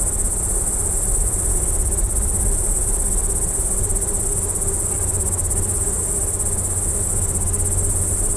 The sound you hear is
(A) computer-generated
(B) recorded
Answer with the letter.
B